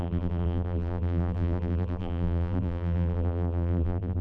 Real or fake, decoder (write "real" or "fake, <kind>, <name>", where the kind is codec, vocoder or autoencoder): fake, vocoder, BigVGAN v2